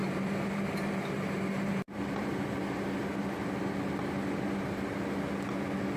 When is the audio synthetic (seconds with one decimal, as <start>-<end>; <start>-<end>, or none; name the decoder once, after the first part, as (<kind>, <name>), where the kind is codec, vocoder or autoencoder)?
0.0-3.6 (vocoder, BigVGAN v2)